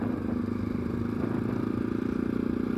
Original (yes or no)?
yes